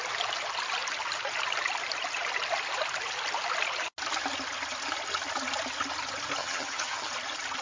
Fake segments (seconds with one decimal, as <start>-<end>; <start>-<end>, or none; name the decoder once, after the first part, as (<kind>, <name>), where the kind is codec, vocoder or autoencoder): 6.4-7.1 (vocoder, HiFi-GAN)